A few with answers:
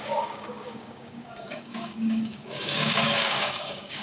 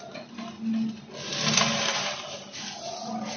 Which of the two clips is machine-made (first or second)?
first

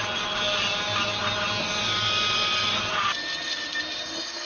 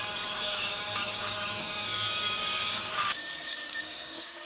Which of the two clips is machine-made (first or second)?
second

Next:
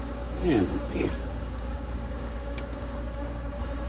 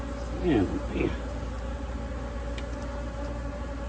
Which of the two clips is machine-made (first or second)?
first